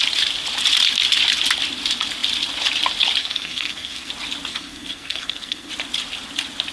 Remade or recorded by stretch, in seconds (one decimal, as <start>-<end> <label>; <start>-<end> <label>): 0.0-3.2 recorded; 3.2-4.1 remade; 4.1-4.5 recorded; 4.5-5.7 remade; 5.7-6.7 recorded